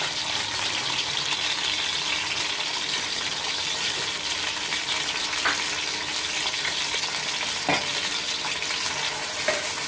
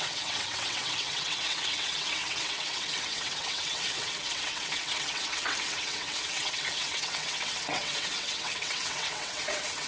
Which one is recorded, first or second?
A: first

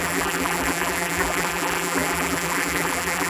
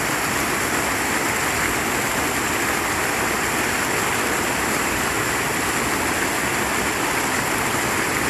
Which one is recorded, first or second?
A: second